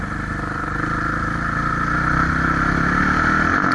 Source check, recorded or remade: recorded